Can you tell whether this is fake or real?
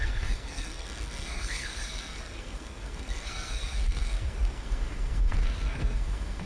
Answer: fake